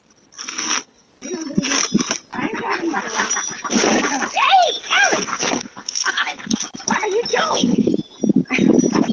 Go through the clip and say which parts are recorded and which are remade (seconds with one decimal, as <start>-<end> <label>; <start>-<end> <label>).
0.0-0.4 recorded; 0.4-1.1 remade; 1.1-5.3 recorded; 5.3-6.6 remade; 6.6-7.3 recorded; 7.3-7.9 remade; 7.9-9.1 recorded